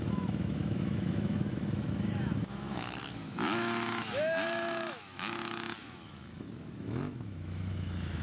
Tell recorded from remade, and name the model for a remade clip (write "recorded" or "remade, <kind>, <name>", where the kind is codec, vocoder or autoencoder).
remade, autoencoder, DAC-VAE